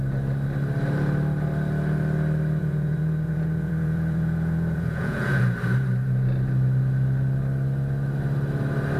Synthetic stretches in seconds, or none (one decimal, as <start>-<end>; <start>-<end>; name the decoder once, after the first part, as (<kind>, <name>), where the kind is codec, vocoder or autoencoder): 2.6-5.4 (vocoder, Vocos)